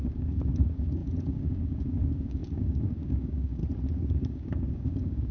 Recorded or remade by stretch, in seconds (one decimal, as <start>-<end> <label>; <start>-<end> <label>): 0.0-3.6 remade; 3.6-4.1 recorded; 4.1-5.3 remade